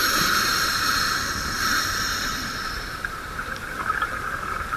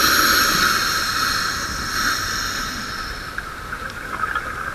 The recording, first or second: second